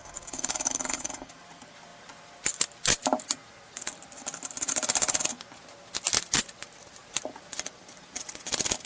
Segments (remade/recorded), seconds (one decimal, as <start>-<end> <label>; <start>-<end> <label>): 0.0-1.3 remade; 1.3-8.9 recorded